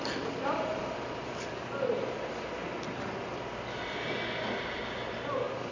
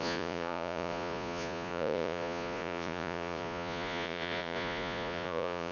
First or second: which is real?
first